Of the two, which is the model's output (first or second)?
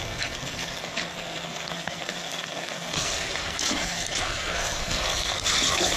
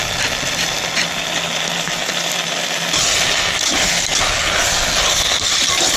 first